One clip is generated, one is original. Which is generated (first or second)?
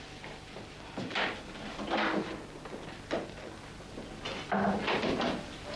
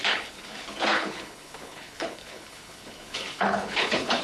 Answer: second